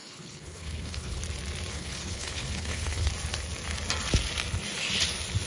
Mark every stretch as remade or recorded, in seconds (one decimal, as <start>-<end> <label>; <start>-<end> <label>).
0.0-1.2 remade; 1.2-1.7 recorded; 1.7-3.1 remade; 3.1-5.5 recorded